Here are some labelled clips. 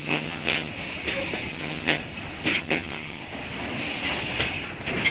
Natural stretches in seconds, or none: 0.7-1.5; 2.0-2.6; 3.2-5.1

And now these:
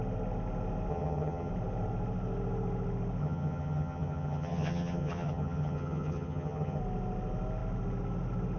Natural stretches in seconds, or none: 0.0-0.9; 1.5-3.2; 6.8-8.6

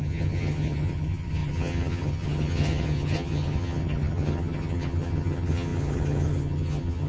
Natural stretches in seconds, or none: none